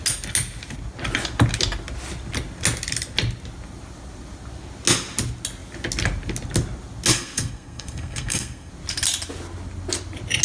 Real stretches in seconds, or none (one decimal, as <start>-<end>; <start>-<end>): 0.0-7.1; 8.7-10.4